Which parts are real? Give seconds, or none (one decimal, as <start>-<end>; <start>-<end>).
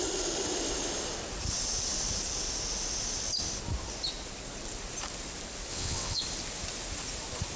0.0-5.7; 6.2-7.6